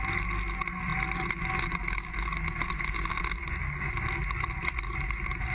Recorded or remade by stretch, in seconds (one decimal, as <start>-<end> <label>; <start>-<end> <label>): 0.0-5.5 recorded